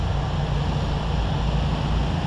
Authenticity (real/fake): real